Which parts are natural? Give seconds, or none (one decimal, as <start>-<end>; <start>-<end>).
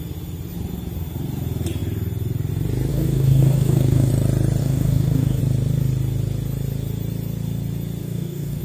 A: 0.0-2.9; 4.1-4.6; 5.4-8.0